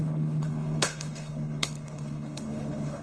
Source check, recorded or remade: remade